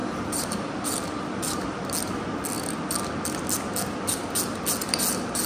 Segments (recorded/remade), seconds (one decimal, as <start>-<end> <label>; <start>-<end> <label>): 0.0-1.8 remade; 1.8-5.5 recorded

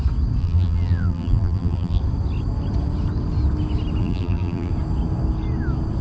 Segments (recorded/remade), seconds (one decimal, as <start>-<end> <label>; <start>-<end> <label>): 0.0-0.4 recorded; 0.4-2.0 remade; 2.0-4.0 recorded; 4.0-4.7 remade; 4.7-6.0 recorded

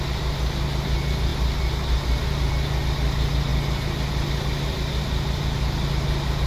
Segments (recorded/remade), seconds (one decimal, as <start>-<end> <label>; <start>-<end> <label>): 0.0-6.5 recorded